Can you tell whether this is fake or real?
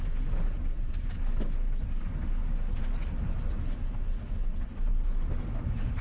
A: real